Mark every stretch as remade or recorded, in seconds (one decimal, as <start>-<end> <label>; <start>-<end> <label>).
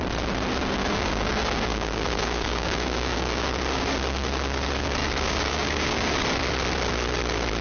0.0-0.8 recorded; 0.8-3.6 remade; 3.6-5.0 recorded; 5.0-6.1 remade; 6.1-7.6 recorded